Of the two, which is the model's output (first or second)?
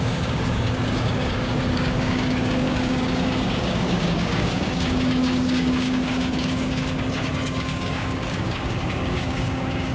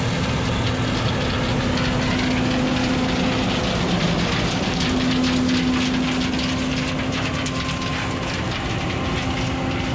first